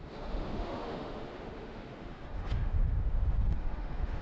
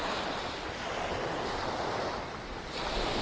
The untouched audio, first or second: second